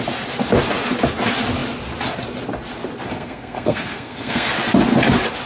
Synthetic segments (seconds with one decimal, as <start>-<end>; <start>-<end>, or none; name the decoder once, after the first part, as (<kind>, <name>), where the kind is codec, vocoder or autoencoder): 3.1-4.5 (codec, SNAC)